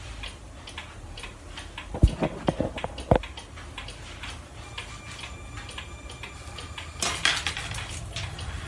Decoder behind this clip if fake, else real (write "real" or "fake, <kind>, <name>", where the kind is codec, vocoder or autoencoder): real